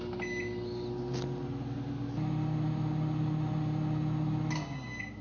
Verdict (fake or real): real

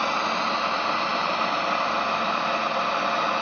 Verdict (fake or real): real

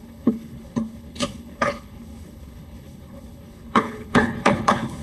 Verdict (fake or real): fake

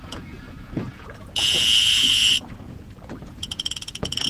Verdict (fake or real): fake